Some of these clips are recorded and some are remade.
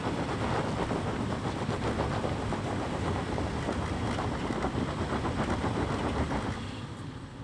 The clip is recorded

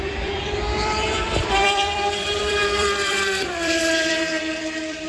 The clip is remade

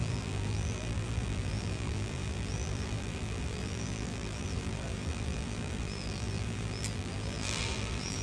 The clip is remade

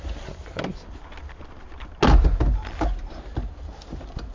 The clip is recorded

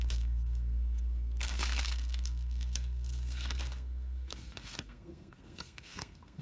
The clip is remade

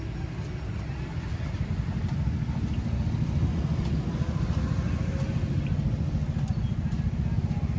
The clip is recorded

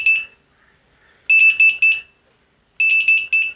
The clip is recorded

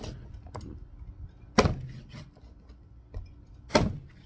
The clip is recorded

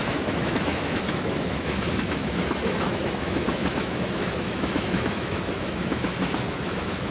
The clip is remade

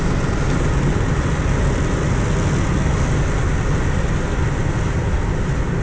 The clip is recorded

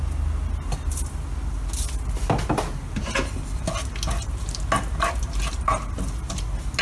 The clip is recorded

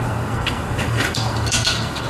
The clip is remade